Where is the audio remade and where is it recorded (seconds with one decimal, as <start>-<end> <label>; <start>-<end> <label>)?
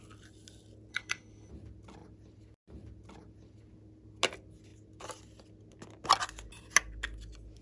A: 0.0-0.9 recorded; 0.9-1.5 remade; 1.5-7.6 recorded